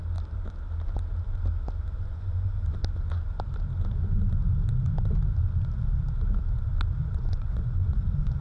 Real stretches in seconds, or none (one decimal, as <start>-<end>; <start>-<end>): 0.0-2.0; 2.8-7.2